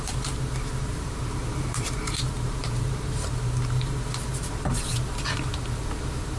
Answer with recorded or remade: remade